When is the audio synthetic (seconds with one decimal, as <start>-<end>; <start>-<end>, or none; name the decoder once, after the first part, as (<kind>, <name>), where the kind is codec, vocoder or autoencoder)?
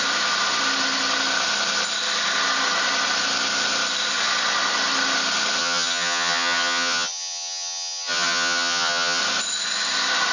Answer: 5.6-9.2 (vocoder, HiFi-GAN)